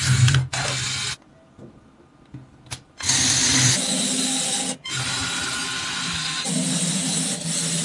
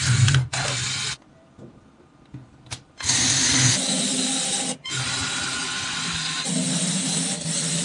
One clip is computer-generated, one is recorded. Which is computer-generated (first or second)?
second